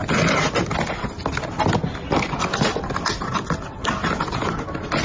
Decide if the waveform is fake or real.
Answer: real